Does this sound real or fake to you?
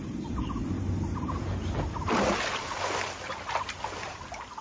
real